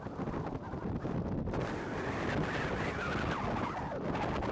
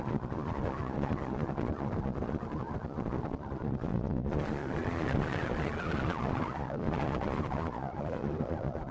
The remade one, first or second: second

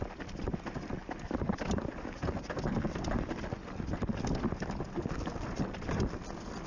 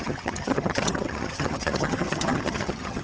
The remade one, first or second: second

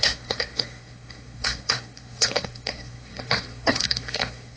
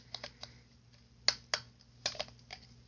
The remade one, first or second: first